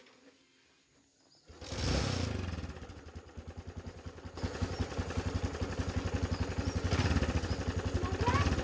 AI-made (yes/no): no